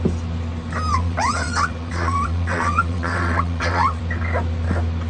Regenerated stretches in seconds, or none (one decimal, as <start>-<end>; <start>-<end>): 0.9-4.0